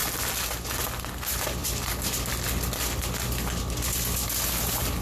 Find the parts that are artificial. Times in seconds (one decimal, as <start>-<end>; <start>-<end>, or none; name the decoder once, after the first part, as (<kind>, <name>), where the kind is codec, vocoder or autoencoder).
none